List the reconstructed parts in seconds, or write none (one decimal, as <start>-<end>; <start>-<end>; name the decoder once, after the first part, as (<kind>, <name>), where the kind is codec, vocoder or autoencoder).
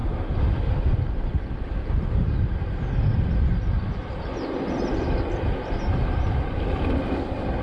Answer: 0.0-0.8 (vocoder, BigVGAN v2); 1.8-2.6